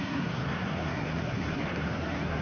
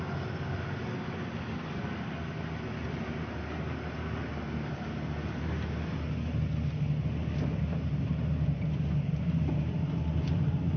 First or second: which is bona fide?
second